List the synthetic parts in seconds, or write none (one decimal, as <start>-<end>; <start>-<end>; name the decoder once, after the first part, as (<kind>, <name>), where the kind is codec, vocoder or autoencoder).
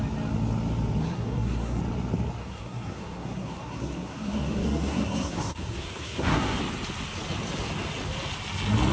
1.0-1.8 (codec, SNAC); 2.4-6.6